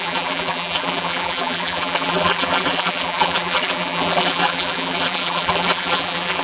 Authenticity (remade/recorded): remade